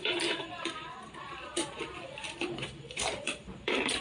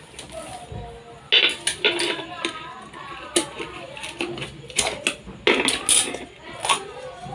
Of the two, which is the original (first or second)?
second